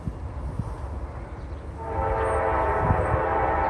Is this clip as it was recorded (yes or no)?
yes